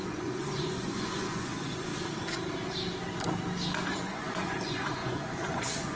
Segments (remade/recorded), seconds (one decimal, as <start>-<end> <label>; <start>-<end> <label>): 0.0-1.9 remade; 1.9-4.0 recorded; 4.0-6.0 remade

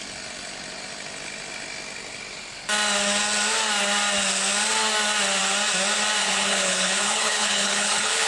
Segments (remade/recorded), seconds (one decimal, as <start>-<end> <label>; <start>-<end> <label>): 0.0-6.2 recorded; 6.2-8.3 remade